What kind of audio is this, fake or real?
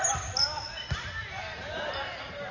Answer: fake